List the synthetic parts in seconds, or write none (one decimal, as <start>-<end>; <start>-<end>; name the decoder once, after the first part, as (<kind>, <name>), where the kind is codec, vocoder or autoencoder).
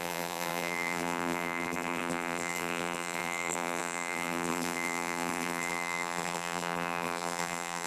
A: 0.0-7.9 (vocoder, BigVGAN v2)